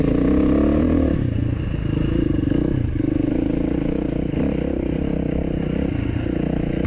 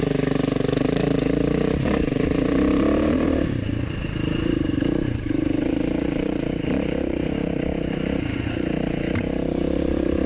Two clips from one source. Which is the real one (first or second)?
first